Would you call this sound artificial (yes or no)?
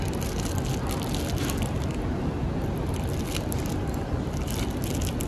no